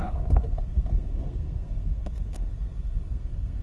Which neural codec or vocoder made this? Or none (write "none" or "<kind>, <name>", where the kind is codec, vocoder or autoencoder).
codec, SNAC